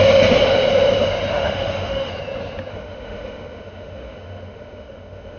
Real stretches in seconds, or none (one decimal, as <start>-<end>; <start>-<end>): 0.0-1.3; 2.1-2.7